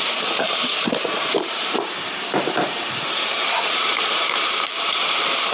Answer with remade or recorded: remade